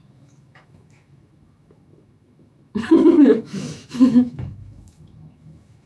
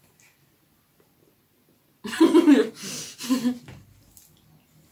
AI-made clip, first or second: first